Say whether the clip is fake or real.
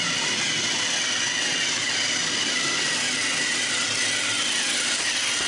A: real